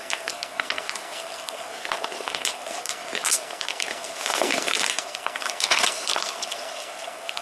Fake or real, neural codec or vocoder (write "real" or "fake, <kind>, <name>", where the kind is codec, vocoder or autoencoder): fake, codec, SNAC